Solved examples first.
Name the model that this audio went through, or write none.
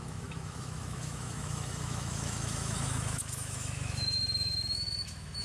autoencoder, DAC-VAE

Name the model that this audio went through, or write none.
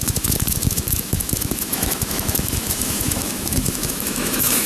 autoencoder, DAC-VAE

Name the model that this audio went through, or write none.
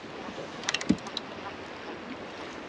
none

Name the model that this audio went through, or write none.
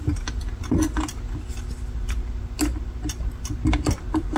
none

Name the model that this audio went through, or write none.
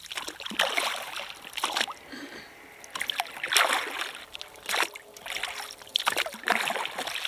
none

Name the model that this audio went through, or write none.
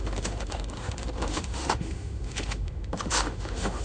autoencoder, DAC-VAE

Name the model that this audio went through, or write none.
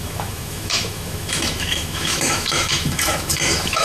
autoencoder, DAC-VAE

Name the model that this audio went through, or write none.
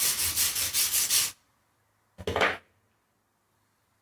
none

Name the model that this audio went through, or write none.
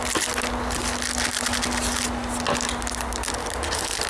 none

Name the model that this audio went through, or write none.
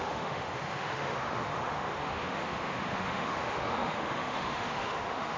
autoencoder, DAC-VAE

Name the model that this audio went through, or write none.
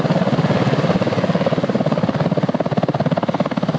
none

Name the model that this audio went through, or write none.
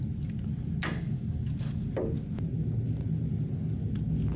none